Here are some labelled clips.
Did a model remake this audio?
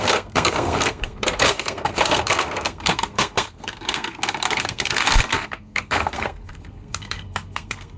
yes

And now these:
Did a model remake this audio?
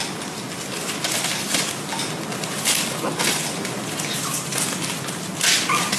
no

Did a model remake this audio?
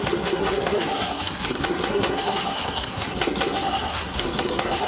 yes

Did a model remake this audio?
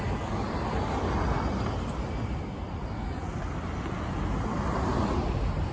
no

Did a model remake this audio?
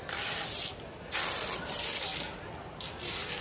no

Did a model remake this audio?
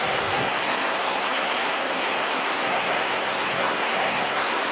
yes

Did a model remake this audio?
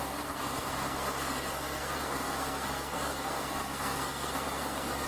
yes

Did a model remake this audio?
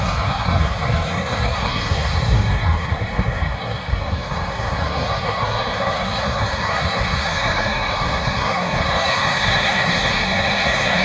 yes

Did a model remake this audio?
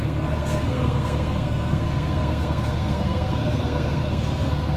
yes